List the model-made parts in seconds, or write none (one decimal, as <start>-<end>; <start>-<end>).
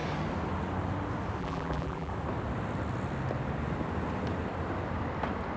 1.4-2.1